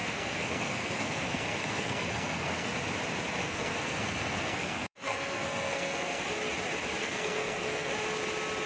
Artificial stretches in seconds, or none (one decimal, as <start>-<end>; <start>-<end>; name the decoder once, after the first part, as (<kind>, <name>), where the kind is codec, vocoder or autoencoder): 0.0-2.7 (codec, SNAC); 3.4-6.2; 7.0-7.9